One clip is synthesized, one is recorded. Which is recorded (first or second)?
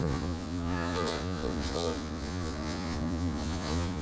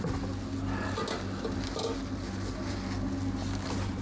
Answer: second